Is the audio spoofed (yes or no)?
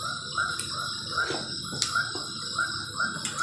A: no